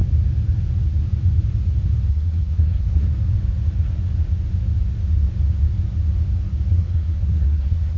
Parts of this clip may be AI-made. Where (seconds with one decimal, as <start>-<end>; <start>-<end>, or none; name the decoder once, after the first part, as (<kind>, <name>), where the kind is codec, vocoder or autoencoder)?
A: 2.1-3.1 (codec, SNAC); 6.7-8.0